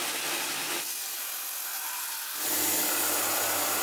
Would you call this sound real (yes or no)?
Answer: yes